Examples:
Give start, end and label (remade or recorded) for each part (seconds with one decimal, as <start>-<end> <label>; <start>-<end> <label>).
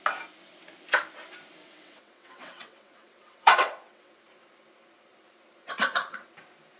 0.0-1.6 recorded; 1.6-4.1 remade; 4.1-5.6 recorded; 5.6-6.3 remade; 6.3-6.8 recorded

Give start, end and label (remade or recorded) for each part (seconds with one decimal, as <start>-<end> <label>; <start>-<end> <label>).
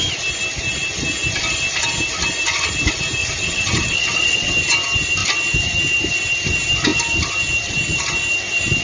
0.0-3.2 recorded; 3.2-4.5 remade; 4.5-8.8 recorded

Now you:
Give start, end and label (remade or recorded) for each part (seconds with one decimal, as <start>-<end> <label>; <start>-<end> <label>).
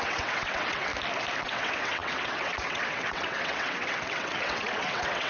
0.0-0.9 remade; 0.9-1.4 recorded; 1.4-5.3 remade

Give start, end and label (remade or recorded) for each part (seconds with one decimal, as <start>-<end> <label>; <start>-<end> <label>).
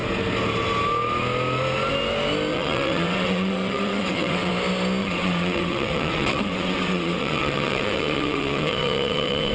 0.0-2.5 recorded; 2.5-4.5 remade; 4.5-5.0 recorded; 5.0-9.5 remade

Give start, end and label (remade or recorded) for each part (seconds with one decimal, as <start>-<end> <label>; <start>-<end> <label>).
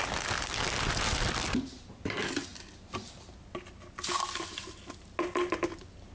0.0-6.1 recorded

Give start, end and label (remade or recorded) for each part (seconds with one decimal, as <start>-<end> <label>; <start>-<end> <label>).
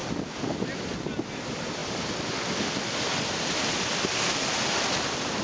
0.0-5.4 recorded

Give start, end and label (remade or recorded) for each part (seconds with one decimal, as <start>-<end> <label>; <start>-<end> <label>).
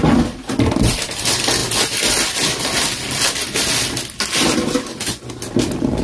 0.0-6.0 recorded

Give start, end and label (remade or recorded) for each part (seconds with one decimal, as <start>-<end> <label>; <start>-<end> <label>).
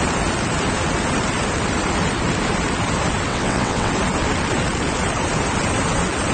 0.0-3.3 recorded; 3.3-3.9 remade; 3.9-6.3 recorded